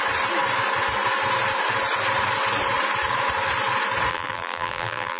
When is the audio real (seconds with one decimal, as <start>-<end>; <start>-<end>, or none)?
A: 0.0-4.1